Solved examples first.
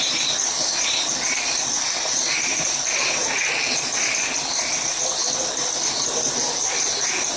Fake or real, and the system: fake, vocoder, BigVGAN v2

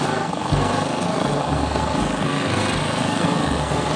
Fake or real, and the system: fake, codec, SNAC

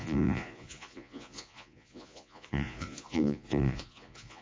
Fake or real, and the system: fake, vocoder, Vocos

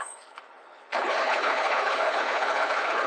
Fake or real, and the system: fake, codec, HILCodec